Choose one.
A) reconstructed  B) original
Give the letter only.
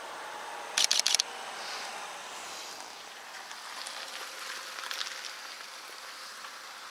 B